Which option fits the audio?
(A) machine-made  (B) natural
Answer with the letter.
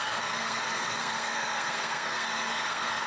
A